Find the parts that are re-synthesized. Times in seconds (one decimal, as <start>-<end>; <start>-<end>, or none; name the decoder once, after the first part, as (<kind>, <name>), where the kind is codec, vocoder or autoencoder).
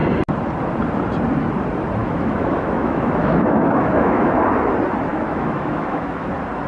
2.0-4.4 (autoencoder, DAC-VAE); 5.1-6.3